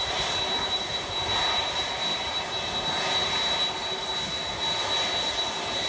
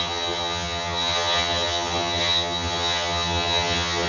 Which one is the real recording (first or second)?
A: first